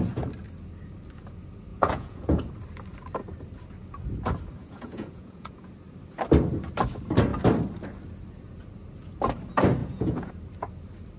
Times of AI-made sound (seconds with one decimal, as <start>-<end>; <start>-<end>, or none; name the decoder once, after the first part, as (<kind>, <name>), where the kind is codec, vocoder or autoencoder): 1.7-2.4 (vocoder, Vocos); 4.6-5.7; 9.8-10.3